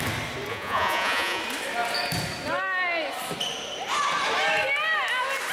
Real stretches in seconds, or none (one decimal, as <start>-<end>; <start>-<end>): 0.0-0.5; 1.4-5.5